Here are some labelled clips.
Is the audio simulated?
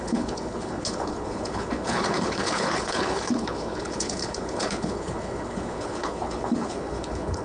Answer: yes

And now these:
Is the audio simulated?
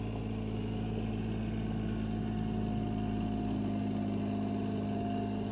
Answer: no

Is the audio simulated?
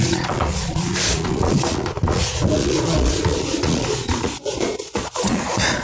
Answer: yes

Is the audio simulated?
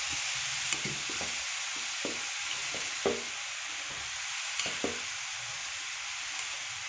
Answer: no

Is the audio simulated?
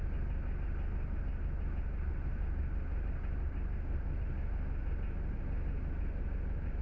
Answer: no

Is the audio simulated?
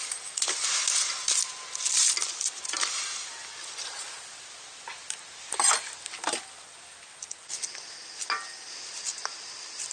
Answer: no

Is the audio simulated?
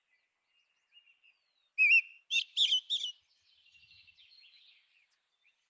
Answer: no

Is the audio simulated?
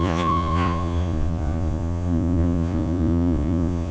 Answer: yes